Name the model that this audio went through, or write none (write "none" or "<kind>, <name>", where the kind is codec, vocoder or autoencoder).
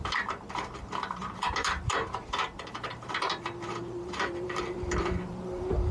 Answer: vocoder, BigVGAN v2